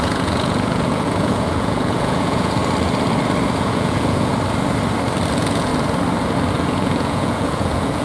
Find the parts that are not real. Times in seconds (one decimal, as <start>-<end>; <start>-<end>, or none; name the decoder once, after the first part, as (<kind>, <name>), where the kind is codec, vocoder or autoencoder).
0.0-2.6 (vocoder, Vocos); 3.6-4.3; 5.3-5.7; 6.5-8.0